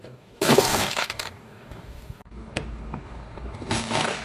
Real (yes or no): no